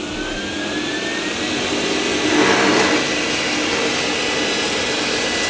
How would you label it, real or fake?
real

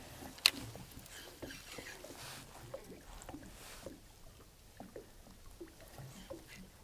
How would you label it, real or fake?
real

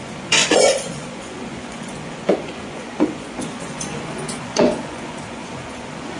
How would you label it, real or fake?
fake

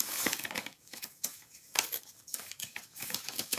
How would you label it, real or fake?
fake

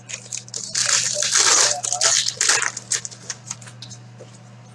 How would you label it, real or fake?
real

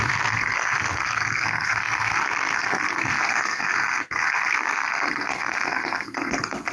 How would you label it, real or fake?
fake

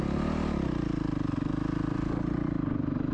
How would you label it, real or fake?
real